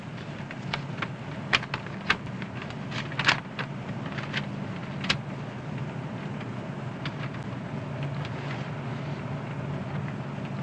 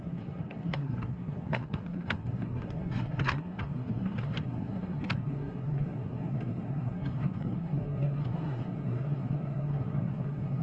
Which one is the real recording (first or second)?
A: first